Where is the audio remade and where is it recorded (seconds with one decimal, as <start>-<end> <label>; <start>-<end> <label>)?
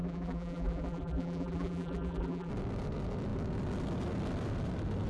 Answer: 0.0-2.5 remade; 2.5-5.1 recorded